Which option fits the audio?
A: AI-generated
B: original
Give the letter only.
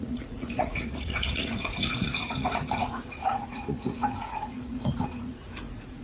A